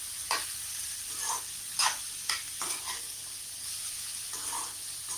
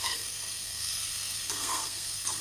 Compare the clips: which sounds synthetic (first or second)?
second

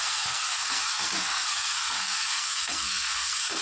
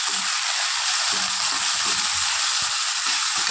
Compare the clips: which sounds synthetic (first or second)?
first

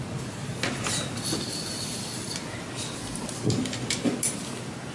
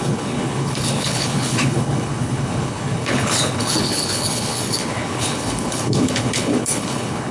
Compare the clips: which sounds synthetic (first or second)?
second